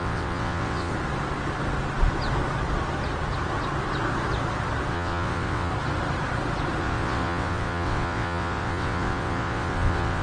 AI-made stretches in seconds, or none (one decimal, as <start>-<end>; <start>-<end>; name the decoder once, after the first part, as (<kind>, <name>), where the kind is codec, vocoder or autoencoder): 0.0-0.9 (vocoder, WaveNeXt); 4.9-5.7; 6.8-10.2